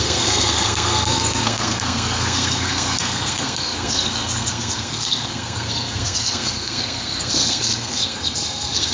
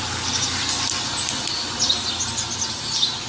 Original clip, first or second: second